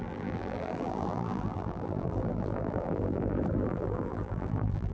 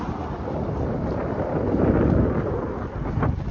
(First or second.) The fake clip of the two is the first